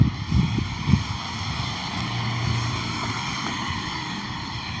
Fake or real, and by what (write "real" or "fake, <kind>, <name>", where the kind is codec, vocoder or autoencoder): fake, codec, DAC